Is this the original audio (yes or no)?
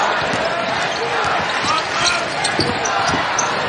yes